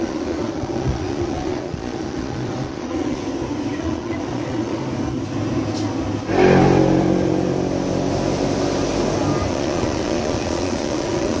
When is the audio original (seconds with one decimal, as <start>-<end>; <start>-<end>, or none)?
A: 3.2-3.8; 4.8-9.5